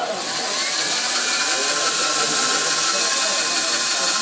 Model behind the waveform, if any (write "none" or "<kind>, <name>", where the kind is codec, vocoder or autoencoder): none